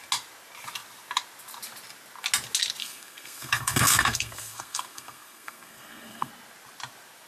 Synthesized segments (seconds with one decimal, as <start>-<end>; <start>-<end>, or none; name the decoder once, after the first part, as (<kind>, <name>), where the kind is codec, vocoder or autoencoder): 2.8-6.3 (codec, SNAC)